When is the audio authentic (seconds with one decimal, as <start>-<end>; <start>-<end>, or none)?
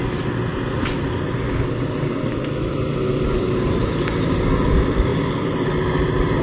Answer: 0.0-6.4